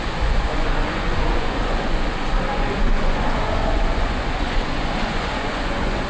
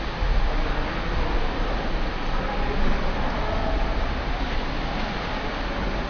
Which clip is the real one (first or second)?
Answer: second